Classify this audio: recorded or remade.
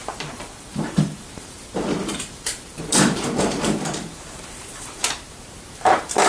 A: remade